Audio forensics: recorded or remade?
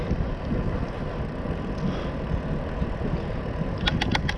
recorded